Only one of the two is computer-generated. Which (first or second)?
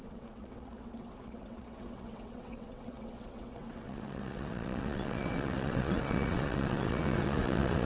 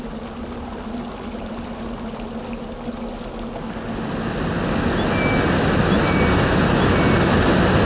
first